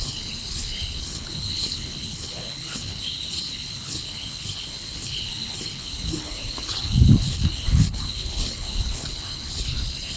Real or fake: fake